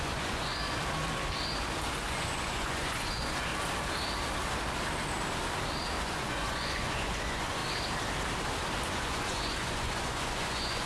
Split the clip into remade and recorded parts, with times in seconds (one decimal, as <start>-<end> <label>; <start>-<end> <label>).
0.0-0.5 remade; 0.5-2.0 recorded; 2.0-3.5 remade; 3.5-6.0 recorded; 6.0-7.6 remade; 7.6-8.9 recorded; 8.9-10.9 remade